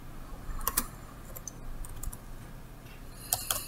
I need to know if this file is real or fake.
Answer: real